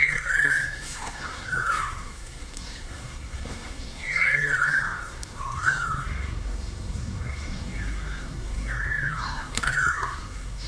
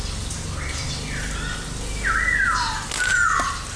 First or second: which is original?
second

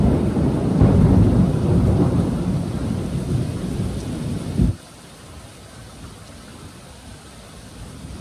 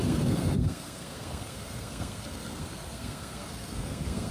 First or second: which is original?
first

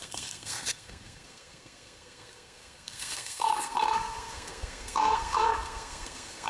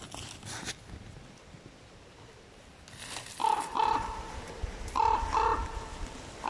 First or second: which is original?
second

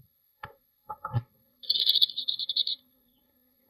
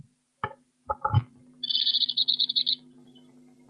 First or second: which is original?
second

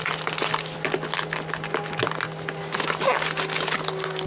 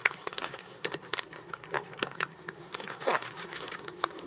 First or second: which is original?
first